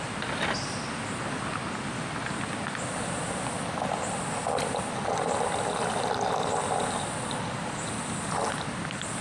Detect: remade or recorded recorded